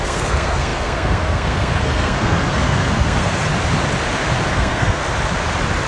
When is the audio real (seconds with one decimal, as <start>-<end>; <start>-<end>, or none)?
3.5-4.5; 5.0-5.9